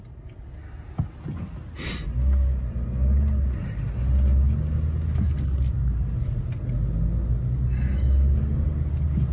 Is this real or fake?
real